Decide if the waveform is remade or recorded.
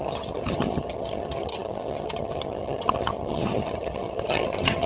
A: remade